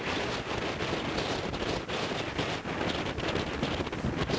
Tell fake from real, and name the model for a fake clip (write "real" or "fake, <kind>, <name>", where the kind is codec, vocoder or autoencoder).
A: real